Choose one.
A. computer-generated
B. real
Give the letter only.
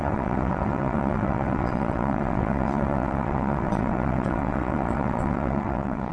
A